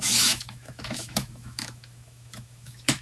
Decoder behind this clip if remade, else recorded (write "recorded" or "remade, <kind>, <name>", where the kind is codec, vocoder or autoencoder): remade, autoencoder, DAC-VAE